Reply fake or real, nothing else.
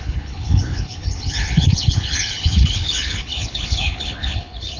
fake